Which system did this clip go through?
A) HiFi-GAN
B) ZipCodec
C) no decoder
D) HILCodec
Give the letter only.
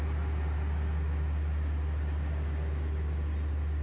C